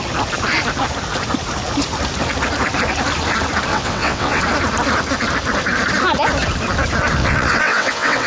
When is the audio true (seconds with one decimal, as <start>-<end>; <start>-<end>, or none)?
0.0-3.7; 4.4-7.2